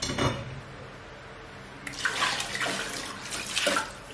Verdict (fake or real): real